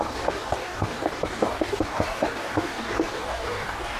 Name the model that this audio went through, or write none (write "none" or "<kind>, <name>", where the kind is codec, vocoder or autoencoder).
codec, DAC